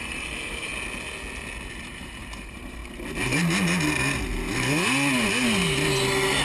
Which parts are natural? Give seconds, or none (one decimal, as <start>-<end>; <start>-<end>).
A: 0.7-1.8; 2.8-6.4